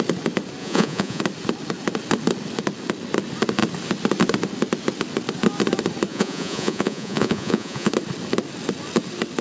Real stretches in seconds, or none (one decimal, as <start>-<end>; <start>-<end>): 0.0-0.6; 1.2-6.1; 7.9-9.4